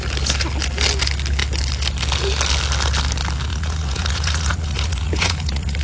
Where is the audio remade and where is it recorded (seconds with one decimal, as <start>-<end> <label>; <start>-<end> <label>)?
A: 0.0-3.5 recorded; 3.5-5.8 remade